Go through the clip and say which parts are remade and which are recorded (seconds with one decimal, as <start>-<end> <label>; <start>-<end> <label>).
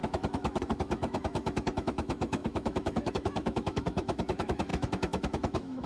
0.0-5.9 remade